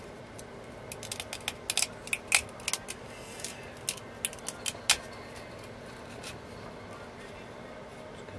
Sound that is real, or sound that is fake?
real